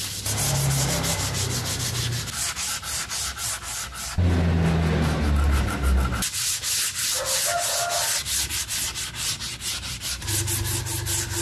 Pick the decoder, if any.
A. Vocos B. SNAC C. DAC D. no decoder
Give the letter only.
D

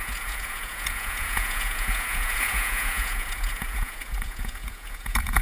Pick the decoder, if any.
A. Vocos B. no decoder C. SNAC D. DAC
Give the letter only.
A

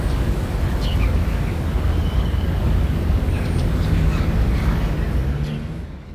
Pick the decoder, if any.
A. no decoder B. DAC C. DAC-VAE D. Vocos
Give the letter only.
B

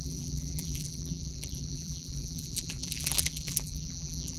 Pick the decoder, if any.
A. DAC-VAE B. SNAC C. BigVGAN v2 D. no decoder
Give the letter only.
C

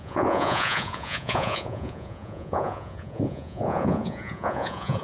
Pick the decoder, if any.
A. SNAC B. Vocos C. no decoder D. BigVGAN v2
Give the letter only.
B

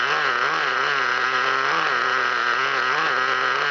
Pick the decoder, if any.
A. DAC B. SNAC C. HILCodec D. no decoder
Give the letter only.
D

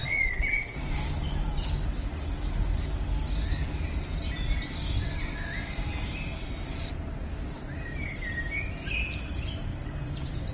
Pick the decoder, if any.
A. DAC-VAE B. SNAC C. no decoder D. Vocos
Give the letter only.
C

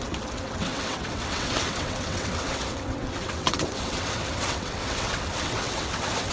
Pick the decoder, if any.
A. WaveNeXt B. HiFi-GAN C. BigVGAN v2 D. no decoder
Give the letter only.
A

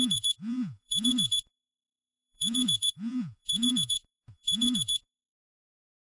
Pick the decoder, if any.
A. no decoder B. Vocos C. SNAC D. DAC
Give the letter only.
B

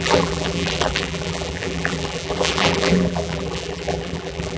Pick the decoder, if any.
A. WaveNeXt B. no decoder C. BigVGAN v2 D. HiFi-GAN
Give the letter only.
C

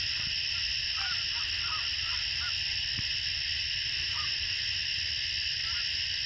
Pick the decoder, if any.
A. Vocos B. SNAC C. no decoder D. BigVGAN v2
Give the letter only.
C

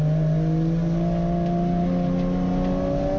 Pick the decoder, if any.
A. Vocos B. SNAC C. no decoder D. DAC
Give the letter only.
C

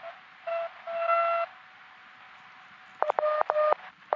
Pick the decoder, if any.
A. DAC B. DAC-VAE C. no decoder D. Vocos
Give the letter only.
C